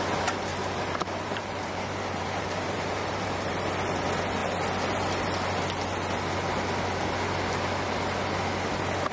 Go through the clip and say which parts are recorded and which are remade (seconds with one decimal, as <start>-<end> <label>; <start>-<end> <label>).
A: 0.0-0.5 recorded; 0.5-3.6 remade; 3.6-9.1 recorded